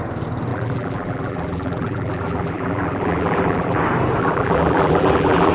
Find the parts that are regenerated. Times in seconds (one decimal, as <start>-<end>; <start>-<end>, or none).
0.5-3.8; 4.2-5.5